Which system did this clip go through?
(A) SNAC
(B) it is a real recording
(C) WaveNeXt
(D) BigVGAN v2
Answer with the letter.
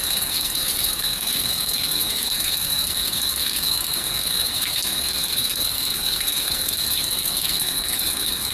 A